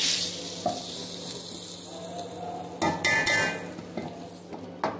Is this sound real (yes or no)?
yes